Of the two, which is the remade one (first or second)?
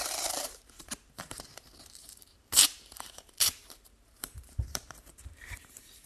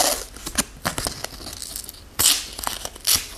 first